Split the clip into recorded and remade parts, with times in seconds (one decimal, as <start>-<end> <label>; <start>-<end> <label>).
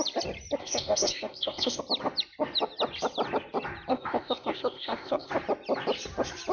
0.0-0.6 recorded; 0.6-1.8 remade; 1.8-3.9 recorded; 3.9-5.3 remade; 5.3-6.5 recorded